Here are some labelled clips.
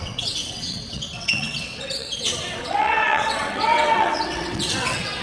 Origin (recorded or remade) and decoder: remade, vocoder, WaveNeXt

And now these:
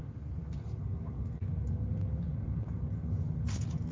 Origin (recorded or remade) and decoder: recorded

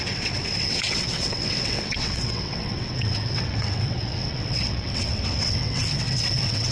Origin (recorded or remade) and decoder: remade, vocoder, WaveNeXt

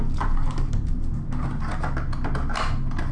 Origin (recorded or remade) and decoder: recorded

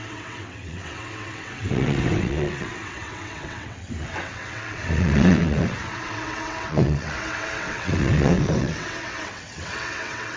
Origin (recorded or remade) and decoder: remade, vocoder, WaveNeXt